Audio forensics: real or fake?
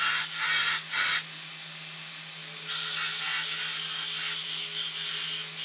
real